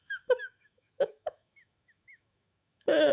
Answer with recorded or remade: remade